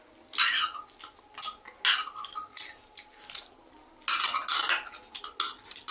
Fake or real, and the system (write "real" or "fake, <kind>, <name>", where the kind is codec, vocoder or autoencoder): real